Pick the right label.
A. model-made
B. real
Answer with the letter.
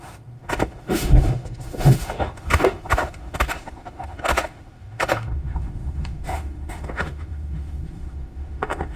A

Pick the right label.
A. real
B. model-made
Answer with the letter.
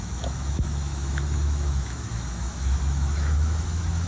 B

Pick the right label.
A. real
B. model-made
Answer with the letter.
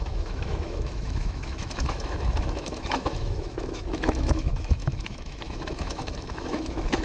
B